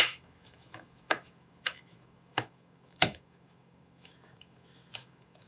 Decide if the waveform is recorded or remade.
remade